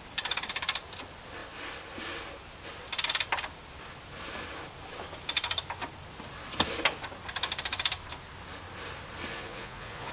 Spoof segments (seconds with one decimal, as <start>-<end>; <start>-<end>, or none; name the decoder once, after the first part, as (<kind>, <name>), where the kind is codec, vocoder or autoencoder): 9.3-10.1 (vocoder, Vocos)